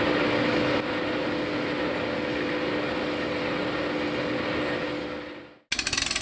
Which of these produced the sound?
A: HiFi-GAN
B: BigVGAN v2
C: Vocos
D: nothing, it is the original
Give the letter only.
D